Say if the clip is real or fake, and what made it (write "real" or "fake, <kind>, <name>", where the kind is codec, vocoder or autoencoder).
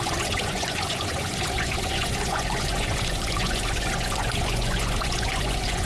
fake, vocoder, Vocos